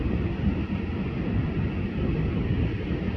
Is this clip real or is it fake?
real